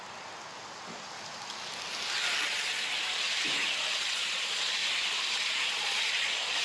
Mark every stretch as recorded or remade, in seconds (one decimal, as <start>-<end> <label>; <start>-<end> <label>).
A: 0.0-4.0 recorded; 4.0-4.8 remade; 4.8-5.5 recorded; 5.5-6.6 remade